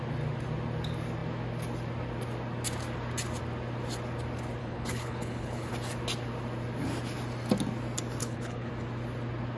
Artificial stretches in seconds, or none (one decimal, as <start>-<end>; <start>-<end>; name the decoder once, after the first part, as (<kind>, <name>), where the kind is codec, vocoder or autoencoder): 4.6-5.7 (codec, HILCodec); 8.2-8.7